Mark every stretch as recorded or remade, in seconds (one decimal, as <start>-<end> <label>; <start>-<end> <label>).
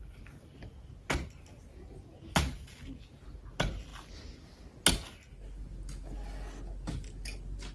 0.0-7.7 recorded